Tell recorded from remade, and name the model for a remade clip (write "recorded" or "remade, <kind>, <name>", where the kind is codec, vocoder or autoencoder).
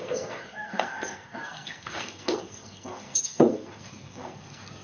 remade, codec, SNAC